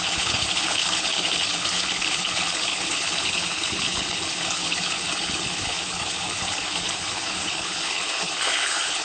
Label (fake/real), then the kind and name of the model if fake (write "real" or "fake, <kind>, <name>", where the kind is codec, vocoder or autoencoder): fake, codec, HILCodec